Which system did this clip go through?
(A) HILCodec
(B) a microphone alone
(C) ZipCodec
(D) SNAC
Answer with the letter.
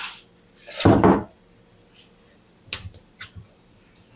B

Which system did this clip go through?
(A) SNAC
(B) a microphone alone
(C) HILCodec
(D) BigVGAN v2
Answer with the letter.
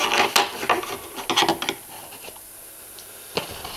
B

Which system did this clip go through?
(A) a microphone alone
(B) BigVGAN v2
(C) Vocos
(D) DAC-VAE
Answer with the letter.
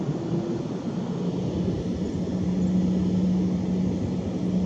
A